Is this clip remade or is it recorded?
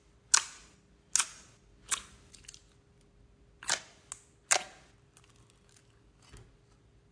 recorded